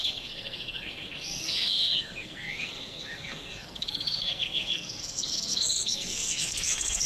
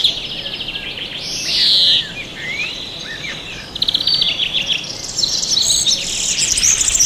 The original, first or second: second